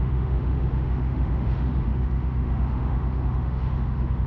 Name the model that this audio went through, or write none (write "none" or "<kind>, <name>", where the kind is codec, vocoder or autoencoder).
autoencoder, DAC-VAE